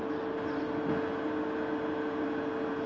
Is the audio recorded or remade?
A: recorded